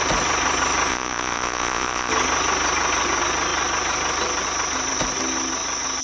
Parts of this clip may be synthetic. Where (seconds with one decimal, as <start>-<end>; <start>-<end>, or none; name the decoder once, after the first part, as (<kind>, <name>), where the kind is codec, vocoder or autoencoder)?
0.9-2.1 (vocoder, Vocos)